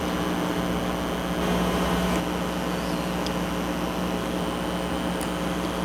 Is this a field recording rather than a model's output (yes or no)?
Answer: yes